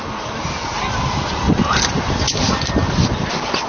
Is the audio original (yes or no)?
yes